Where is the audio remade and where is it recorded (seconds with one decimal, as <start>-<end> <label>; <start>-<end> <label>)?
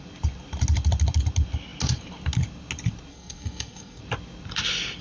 0.0-3.1 recorded; 3.1-4.0 remade; 4.0-5.0 recorded